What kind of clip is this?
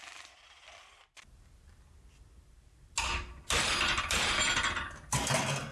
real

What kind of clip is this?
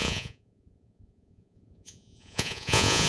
fake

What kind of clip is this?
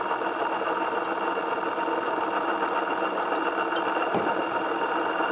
real